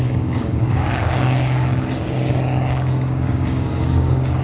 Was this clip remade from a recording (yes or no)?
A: yes